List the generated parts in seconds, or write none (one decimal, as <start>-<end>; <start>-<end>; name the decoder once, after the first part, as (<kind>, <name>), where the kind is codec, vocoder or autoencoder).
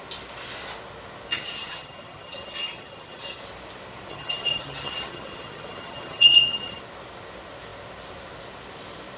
1.3-3.4 (vocoder, HiFi-GAN); 4.1-6.8